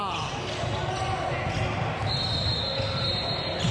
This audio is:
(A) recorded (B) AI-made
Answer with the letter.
A